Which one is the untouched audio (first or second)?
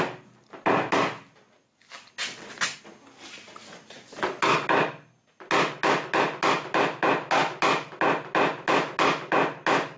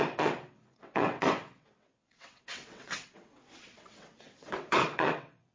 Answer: first